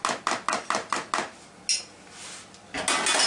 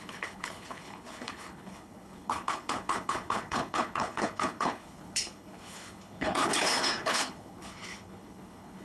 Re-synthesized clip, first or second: second